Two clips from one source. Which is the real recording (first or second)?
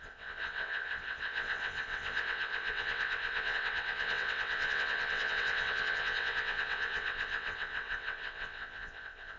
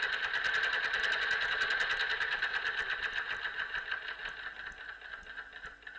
second